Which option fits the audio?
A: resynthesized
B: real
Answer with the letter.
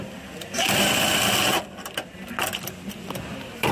B